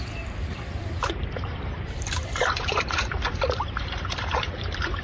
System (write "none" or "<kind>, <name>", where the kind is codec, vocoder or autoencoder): vocoder, BigVGAN v2